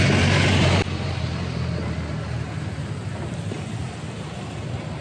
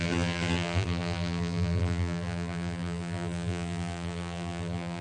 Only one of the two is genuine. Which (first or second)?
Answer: first